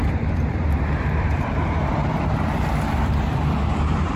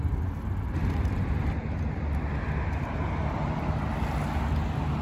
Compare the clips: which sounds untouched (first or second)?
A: second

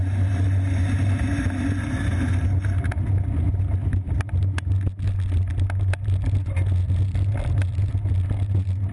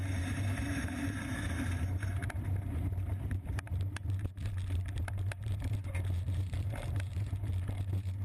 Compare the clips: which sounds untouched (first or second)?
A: first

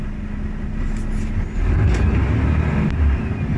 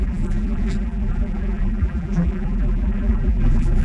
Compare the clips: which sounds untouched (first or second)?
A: first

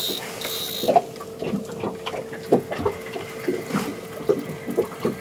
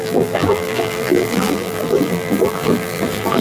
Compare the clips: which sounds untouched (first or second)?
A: first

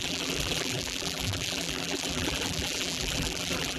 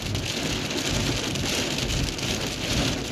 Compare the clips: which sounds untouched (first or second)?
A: second